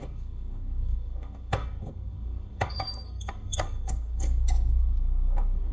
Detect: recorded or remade remade